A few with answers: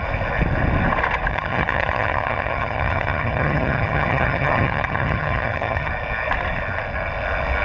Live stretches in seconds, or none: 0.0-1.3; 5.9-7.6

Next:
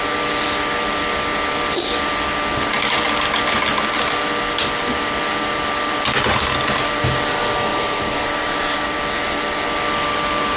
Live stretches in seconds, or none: 0.0-7.7; 9.0-10.6

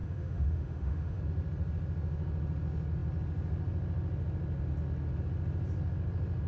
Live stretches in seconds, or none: 1.2-6.5

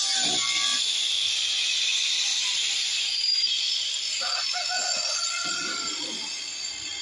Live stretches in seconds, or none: 0.0-0.7; 1.3-2.3; 4.2-7.0

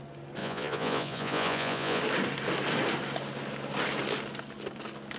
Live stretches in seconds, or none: 0.0-0.4; 2.0-5.2

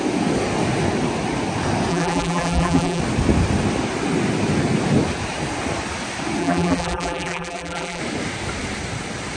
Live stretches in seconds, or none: 0.0-1.9; 3.0-6.4; 8.0-9.4